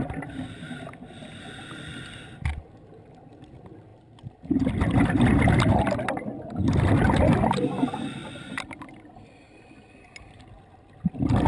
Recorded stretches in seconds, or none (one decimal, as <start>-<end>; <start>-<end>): 0.0-11.5